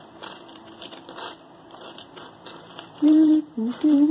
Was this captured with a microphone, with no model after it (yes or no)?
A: no